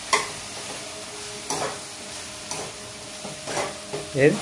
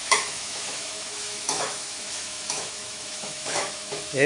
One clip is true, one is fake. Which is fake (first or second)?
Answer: second